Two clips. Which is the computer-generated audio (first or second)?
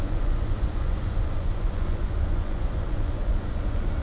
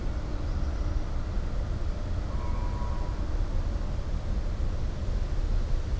first